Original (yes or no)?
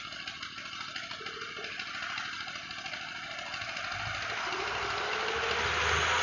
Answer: yes